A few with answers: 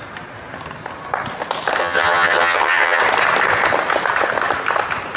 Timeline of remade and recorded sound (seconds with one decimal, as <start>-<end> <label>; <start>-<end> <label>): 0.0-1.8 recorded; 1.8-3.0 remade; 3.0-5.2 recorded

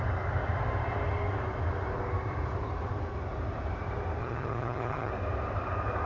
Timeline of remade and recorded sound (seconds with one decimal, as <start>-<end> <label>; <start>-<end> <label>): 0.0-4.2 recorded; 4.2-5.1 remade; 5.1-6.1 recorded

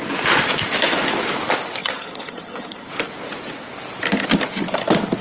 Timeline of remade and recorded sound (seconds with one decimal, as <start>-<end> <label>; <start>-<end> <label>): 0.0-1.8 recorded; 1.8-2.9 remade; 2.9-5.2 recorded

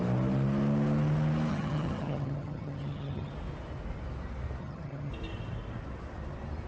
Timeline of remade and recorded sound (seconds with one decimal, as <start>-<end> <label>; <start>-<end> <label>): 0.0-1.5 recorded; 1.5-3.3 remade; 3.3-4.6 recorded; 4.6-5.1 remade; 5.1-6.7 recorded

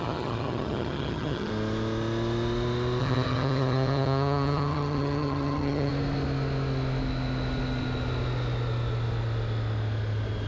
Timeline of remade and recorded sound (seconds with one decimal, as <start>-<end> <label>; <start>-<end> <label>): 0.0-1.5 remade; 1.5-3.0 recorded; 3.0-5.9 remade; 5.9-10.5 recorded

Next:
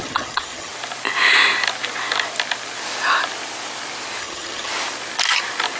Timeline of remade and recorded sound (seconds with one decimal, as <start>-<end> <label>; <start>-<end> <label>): 0.0-0.7 remade; 0.7-4.2 recorded; 4.2-4.7 remade; 4.7-5.8 recorded